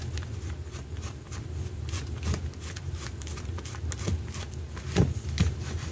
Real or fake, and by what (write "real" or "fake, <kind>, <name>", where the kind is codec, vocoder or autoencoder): real